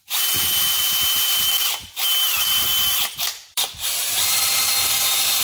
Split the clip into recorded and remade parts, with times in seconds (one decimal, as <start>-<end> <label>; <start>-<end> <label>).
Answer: 0.0-1.8 recorded; 1.8-5.0 remade; 5.0-5.4 recorded